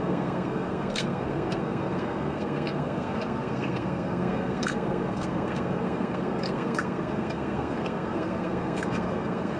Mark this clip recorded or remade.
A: remade